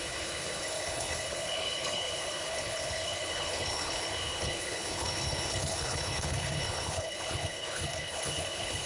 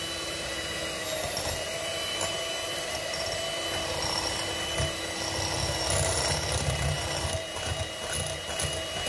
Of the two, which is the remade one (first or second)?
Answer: first